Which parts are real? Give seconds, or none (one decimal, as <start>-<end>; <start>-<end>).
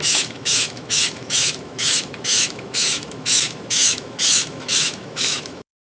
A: none